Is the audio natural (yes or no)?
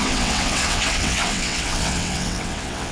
no